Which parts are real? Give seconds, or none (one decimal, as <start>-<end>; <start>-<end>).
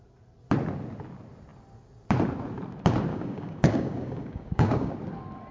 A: 0.0-3.1; 4.9-5.5